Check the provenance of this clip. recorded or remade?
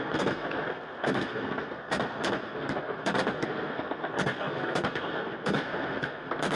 remade